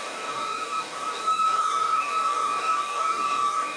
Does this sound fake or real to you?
fake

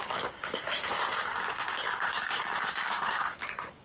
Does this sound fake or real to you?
fake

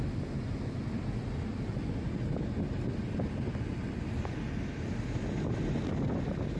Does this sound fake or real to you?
real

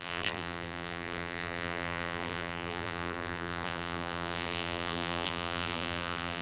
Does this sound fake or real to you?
fake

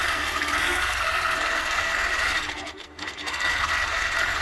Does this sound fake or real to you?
fake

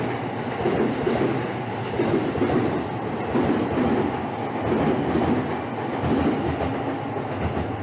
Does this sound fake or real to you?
real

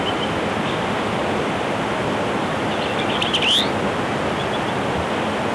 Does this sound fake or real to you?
real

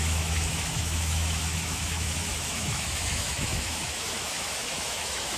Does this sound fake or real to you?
fake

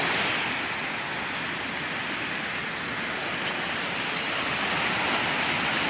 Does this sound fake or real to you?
real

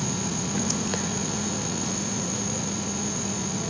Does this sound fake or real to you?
fake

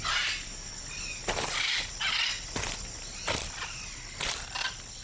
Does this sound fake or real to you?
real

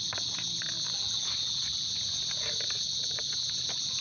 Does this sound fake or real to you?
real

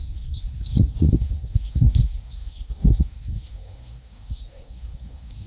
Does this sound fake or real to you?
fake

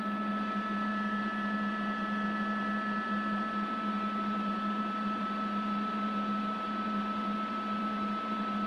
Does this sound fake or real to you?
real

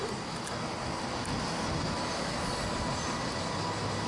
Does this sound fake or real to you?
real